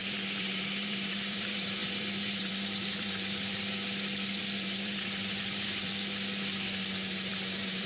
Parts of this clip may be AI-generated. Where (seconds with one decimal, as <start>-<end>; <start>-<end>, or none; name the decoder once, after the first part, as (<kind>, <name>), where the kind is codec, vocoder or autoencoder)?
0.0-5.9 (vocoder, BigVGAN v2); 7.3-7.9